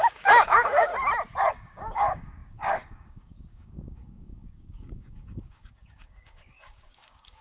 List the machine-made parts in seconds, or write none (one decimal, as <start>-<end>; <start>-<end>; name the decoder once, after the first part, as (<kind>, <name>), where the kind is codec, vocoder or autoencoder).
0.0-0.9 (codec, DAC); 1.5-7.4